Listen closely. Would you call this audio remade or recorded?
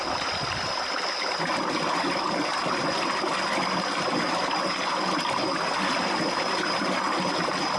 recorded